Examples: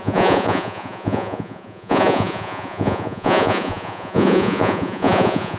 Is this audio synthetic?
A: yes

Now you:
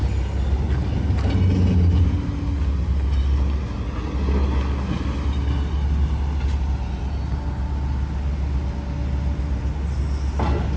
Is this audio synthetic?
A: no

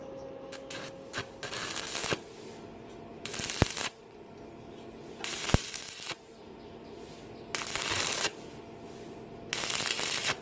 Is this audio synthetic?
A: no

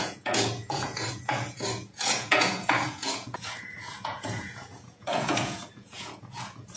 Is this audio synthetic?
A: yes